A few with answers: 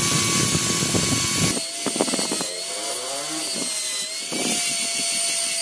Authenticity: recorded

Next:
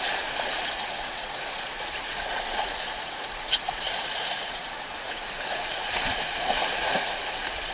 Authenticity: remade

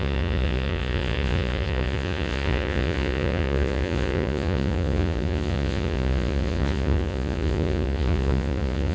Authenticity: remade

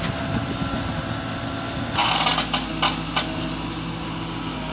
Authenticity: recorded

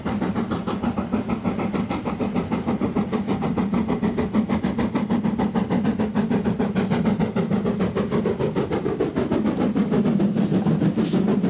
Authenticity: recorded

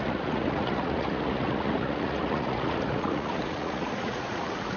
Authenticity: remade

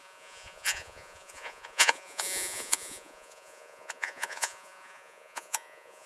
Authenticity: remade